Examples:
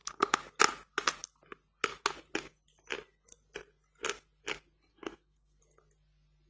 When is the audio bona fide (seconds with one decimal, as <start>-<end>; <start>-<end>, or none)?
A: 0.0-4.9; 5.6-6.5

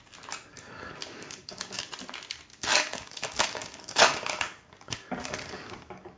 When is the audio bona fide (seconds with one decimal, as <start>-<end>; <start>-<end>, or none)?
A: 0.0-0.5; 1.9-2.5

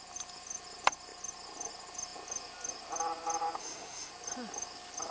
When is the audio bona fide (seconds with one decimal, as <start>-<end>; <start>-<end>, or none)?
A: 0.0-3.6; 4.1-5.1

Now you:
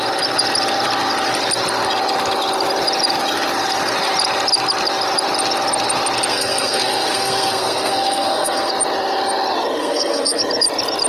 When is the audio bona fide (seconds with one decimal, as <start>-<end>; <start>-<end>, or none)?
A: 0.0-6.3; 8.7-9.8; 10.4-11.1

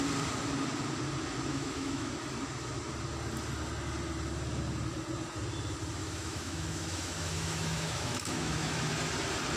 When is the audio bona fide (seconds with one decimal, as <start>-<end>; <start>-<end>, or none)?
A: 0.0-1.5; 2.1-6.0; 8.9-9.6

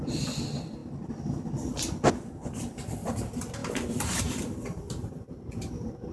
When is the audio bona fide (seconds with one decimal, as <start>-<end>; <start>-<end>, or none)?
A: 0.0-6.1

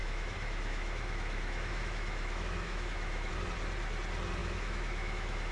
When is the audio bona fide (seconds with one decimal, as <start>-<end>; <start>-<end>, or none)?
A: 3.3-4.4

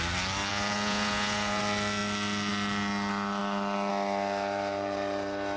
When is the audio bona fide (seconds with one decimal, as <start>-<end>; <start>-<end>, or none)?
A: 0.0-0.5; 1.6-5.6